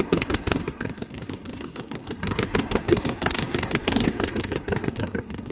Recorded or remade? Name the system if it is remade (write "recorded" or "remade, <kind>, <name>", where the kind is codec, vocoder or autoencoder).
remade, codec, SNAC